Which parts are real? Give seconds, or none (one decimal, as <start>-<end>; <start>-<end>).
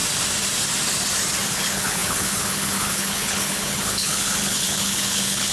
0.0-1.5